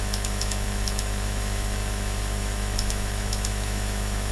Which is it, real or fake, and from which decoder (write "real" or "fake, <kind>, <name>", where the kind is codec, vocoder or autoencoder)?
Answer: fake, autoencoder, DAC-VAE